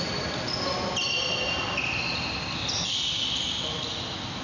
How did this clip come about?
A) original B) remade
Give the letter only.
A